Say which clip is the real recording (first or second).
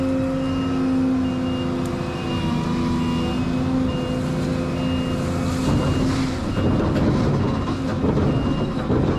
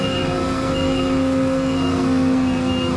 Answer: first